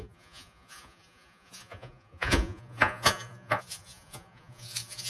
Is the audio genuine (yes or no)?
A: no